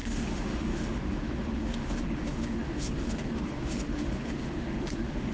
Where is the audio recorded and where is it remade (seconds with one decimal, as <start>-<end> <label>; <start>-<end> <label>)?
0.0-5.3 remade